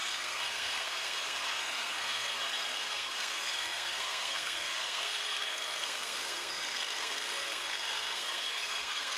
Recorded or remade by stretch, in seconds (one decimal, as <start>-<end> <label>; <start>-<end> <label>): 0.0-9.2 remade